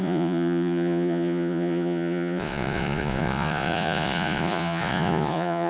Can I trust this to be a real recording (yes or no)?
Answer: no